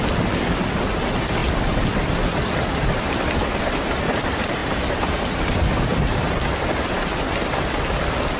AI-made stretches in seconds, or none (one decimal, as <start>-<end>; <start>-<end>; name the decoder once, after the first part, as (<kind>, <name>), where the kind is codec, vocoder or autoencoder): 1.4-3.6 (vocoder, BigVGAN v2); 4.6-7.2